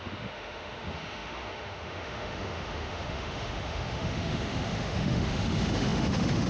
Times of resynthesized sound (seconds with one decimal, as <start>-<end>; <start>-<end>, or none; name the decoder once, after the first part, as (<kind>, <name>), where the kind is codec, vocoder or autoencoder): 0.0-6.5 (autoencoder, DAC-VAE)